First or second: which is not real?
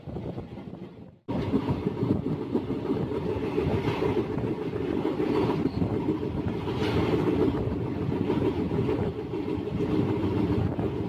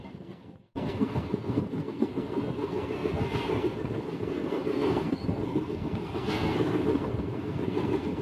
second